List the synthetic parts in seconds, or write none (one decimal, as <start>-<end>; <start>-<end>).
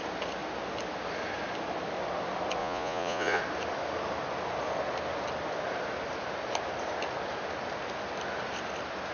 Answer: 2.6-3.4